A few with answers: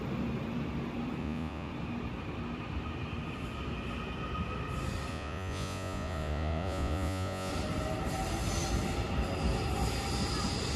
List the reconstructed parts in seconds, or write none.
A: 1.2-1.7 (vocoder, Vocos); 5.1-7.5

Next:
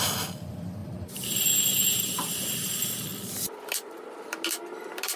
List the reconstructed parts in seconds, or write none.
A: 0.8-1.4 (vocoder, BigVGAN v2)

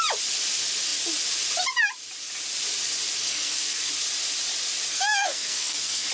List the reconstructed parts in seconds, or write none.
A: 3.3-3.9 (codec, SNAC); 4.9-6.1

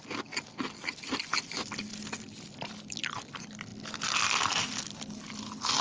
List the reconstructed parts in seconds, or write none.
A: none

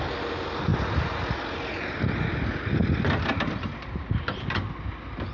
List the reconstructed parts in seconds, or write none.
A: none

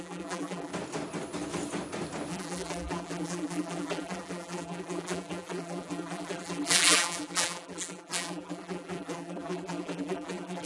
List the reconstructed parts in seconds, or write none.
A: 0.0-0.7 (vocoder, BigVGAN v2); 2.3-10.7

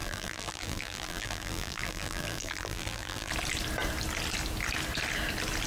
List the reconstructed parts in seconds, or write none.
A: 0.0-3.3 (vocoder, BigVGAN v2)

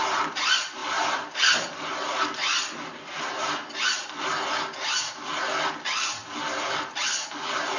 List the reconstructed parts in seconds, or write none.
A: none